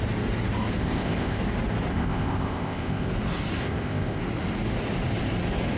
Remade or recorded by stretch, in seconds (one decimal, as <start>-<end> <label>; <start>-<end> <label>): 0.0-0.8 recorded; 0.8-1.4 remade; 1.4-1.9 recorded; 1.9-3.1 remade; 3.1-3.6 recorded; 3.6-4.2 remade; 4.2-5.8 recorded